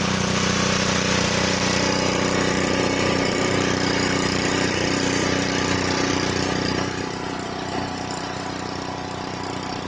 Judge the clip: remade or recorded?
remade